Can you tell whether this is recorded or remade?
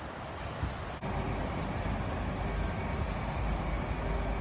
recorded